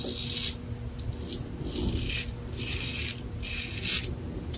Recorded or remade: recorded